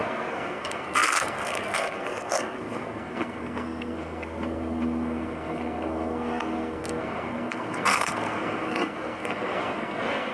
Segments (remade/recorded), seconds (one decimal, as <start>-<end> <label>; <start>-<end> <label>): 0.0-10.3 remade

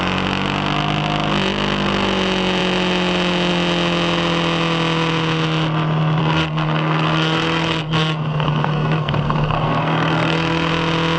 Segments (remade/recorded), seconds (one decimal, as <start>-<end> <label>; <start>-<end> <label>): 0.0-6.2 recorded; 6.2-10.7 remade; 10.7-11.2 recorded

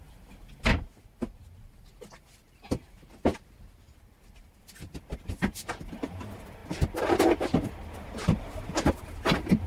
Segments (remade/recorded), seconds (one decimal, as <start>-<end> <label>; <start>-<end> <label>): 0.0-9.7 recorded

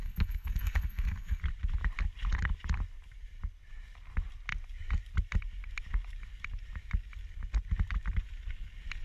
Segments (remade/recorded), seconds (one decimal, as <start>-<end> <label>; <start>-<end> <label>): 0.0-1.4 remade; 1.4-9.0 recorded

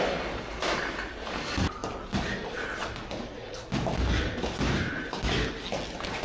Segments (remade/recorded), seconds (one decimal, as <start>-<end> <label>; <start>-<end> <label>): 0.0-6.2 recorded

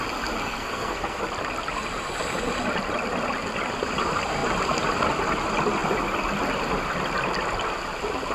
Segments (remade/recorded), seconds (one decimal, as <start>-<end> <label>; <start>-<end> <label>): 0.0-0.4 recorded; 0.4-1.2 remade; 1.2-8.3 recorded

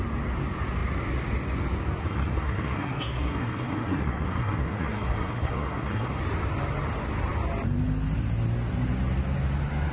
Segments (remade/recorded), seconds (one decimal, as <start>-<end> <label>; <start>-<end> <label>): 0.0-2.0 recorded; 2.0-6.2 remade; 6.2-9.9 recorded